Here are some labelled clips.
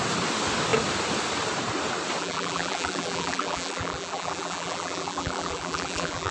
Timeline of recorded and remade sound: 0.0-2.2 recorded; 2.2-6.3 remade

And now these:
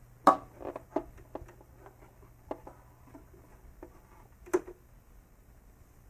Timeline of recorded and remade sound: 0.0-6.1 recorded

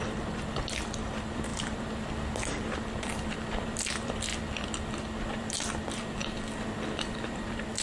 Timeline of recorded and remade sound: 0.0-7.8 remade

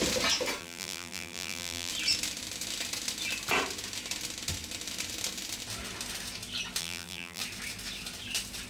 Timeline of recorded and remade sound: 0.0-0.6 recorded; 0.6-1.9 remade; 1.9-6.8 recorded; 6.8-7.4 remade; 7.4-8.7 recorded

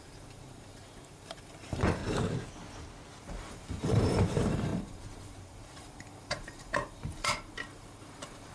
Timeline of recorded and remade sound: 0.0-2.0 remade; 2.0-3.2 recorded; 3.2-8.5 remade

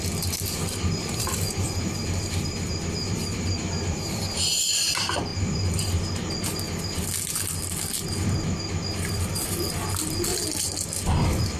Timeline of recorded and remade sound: 0.0-5.3 remade; 5.3-7.5 recorded; 7.5-10.3 remade; 10.3-11.2 recorded; 11.2-11.6 remade

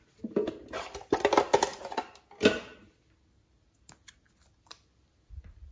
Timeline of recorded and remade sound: 0.0-5.7 recorded